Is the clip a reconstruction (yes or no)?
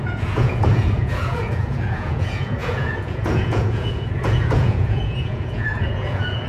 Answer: yes